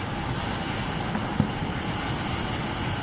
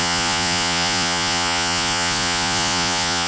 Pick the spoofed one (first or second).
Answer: second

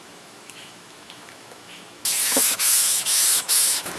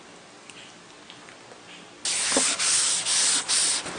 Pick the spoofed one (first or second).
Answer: first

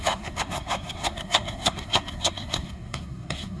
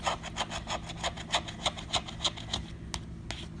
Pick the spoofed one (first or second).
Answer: first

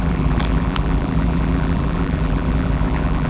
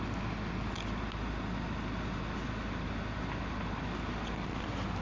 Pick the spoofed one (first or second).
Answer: first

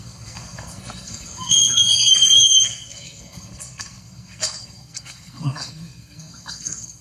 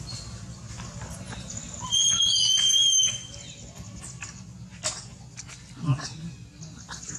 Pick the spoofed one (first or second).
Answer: first